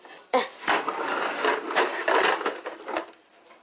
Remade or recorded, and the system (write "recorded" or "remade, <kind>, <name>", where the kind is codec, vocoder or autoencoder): recorded